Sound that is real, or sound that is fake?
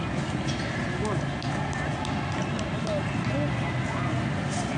real